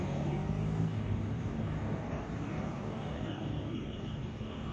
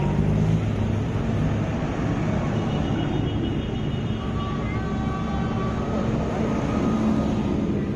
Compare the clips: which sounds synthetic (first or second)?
first